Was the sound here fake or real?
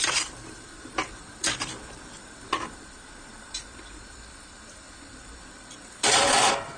fake